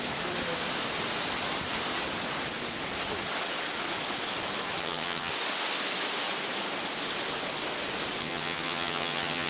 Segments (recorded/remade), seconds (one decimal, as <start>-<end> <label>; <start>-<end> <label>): 0.0-4.8 recorded; 4.8-5.3 remade; 5.3-8.2 recorded; 8.2-9.5 remade